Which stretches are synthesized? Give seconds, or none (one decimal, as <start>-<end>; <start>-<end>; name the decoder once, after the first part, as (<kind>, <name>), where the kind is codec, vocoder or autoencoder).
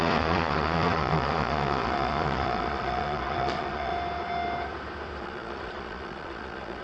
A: 0.0-3.9 (vocoder, Vocos); 5.2-6.8